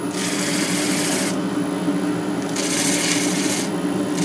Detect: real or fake real